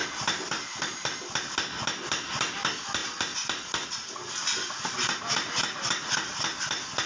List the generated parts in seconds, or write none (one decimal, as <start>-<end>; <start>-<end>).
none